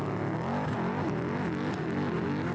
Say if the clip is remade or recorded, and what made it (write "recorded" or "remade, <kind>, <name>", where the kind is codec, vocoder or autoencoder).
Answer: recorded